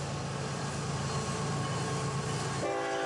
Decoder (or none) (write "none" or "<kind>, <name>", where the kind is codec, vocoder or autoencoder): none